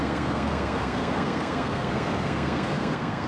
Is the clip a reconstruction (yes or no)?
yes